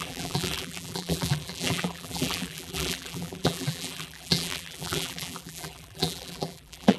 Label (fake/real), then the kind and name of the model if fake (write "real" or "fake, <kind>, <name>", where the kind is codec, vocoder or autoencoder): fake, vocoder, BigVGAN v2